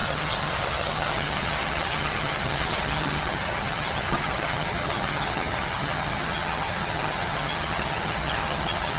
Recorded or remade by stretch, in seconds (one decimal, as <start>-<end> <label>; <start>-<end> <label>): 0.0-9.0 remade